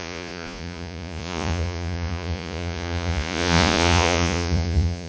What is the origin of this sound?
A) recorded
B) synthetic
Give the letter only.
B